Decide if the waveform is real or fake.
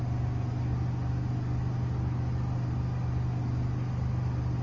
real